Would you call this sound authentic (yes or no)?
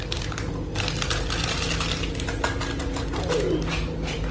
yes